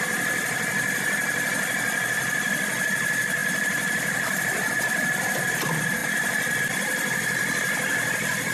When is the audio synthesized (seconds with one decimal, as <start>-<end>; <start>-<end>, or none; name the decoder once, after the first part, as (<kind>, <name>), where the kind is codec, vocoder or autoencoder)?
none